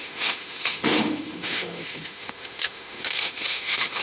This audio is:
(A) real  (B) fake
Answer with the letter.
B